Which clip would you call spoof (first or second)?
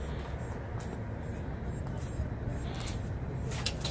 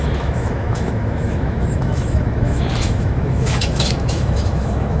second